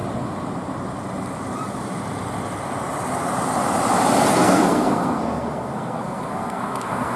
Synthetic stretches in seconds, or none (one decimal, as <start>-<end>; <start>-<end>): 4.3-7.2